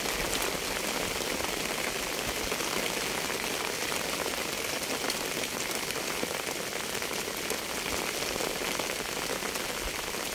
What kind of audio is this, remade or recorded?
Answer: recorded